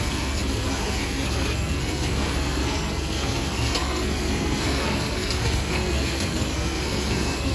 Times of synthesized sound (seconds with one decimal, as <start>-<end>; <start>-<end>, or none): 0.0-7.5